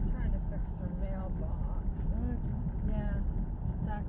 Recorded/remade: recorded